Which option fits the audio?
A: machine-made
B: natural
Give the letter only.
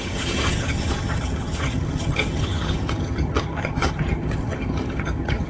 A